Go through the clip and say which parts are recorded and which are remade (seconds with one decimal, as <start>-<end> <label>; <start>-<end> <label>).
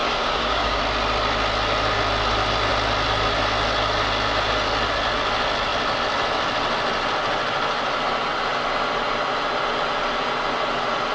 0.0-0.8 remade; 0.8-11.1 recorded